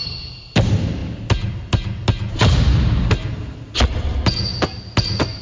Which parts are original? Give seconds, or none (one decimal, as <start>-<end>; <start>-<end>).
0.0-5.4